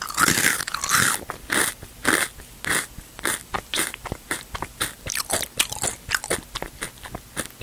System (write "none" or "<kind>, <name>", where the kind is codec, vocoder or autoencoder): none